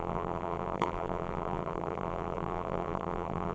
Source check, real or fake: fake